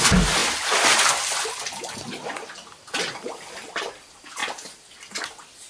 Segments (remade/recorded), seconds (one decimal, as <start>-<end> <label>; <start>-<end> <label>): 0.0-5.7 recorded